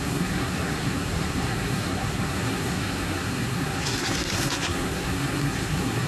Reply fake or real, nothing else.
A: fake